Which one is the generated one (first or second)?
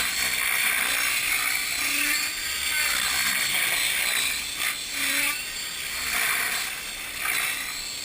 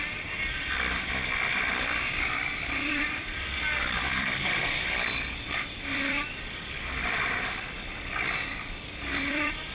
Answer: second